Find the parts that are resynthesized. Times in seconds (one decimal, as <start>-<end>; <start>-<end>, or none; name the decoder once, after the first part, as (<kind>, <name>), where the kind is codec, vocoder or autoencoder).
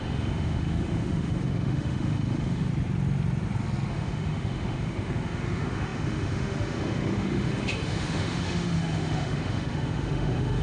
0.0-2.7 (autoencoder, DAC-VAE); 3.9-10.6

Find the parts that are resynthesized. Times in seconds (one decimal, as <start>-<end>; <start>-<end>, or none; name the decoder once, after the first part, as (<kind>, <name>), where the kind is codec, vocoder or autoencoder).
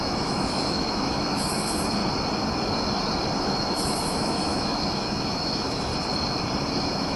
0.0-2.0 (autoencoder, DAC-VAE); 3.4-5.9; 6.8-7.2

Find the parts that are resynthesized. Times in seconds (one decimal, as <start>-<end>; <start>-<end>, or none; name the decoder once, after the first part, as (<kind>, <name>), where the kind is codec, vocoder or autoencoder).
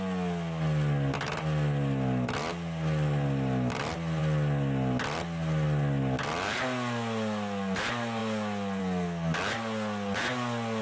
none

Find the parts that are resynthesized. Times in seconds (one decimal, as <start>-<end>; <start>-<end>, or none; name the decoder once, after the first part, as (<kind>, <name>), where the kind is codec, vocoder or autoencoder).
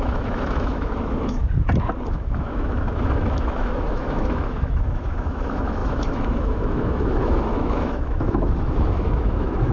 0.0-1.4 (autoencoder, DAC-VAE); 2.1-9.7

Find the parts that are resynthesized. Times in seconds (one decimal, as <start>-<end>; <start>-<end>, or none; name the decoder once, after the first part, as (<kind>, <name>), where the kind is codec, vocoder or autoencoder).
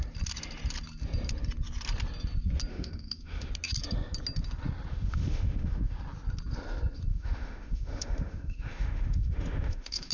2.7-3.5 (autoencoder, DAC-VAE); 4.9-6.0; 7.1-10.1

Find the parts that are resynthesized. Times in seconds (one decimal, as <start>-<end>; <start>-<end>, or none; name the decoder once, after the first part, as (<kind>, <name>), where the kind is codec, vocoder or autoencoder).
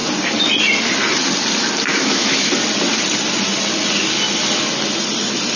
1.9-2.5 (autoencoder, DAC-VAE)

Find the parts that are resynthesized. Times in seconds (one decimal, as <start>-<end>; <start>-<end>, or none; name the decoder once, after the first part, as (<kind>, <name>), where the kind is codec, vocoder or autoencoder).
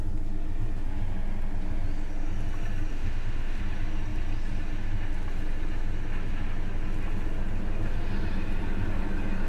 2.9-3.6 (autoencoder, DAC-VAE)